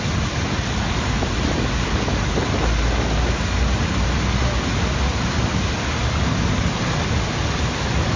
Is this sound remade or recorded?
recorded